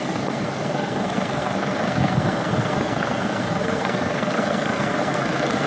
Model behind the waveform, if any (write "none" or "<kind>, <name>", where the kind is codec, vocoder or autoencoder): codec, SNAC